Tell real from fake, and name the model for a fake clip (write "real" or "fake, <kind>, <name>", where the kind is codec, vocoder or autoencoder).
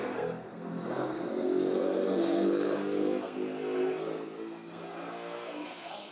fake, codec, SNAC